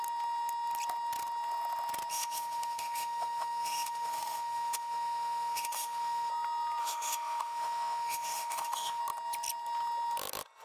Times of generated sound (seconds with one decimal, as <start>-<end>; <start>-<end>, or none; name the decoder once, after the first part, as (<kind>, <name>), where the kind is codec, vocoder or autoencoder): 2.1-6.3 (autoencoder, DAC-VAE); 6.8-9.0